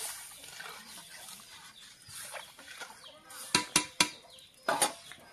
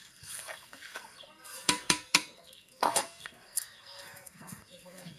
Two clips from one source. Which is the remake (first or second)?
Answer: second